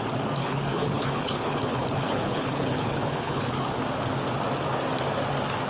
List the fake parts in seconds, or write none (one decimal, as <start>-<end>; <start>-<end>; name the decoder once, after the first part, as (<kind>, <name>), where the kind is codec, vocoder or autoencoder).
0.4-3.8 (codec, HILCodec)